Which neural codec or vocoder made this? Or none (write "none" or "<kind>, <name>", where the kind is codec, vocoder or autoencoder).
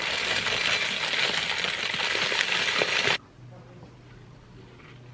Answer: none